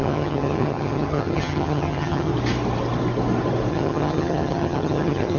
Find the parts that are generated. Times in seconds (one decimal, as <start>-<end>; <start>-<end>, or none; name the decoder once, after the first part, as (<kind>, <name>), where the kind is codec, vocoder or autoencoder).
0.0-2.3 (vocoder, HiFi-GAN); 3.7-5.4